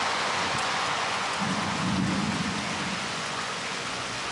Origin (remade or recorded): remade